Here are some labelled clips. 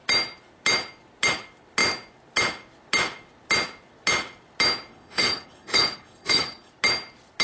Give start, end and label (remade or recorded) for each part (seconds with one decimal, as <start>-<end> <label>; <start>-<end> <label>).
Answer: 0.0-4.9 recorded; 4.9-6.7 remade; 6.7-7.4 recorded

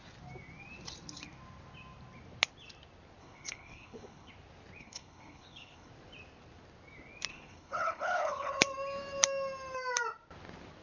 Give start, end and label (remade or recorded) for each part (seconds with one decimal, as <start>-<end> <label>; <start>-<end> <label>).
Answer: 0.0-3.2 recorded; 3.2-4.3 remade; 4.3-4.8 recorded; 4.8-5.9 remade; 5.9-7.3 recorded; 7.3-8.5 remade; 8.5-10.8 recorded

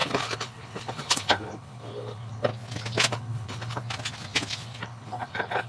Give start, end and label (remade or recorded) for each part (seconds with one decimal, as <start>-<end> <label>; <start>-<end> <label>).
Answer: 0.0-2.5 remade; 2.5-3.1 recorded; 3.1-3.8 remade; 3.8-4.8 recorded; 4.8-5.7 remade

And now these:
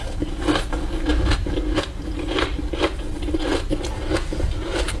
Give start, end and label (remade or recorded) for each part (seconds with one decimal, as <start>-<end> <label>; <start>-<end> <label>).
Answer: 0.0-5.0 recorded

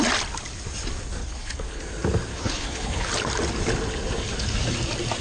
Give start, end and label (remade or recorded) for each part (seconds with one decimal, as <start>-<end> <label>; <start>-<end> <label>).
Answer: 0.0-1.2 recorded; 1.2-1.8 remade; 1.8-2.3 recorded; 2.3-3.1 remade; 3.1-5.2 recorded

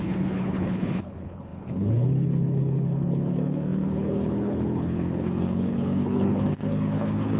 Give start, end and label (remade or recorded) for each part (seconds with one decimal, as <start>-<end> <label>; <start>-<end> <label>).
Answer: 0.0-7.4 remade

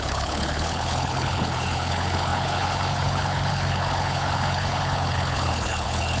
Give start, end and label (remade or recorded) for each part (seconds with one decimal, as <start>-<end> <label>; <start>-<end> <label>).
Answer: 0.0-6.2 remade

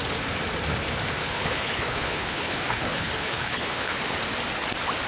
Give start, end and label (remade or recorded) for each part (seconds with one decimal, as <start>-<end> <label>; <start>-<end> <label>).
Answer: 0.0-1.2 recorded; 1.2-4.0 remade; 4.0-5.1 recorded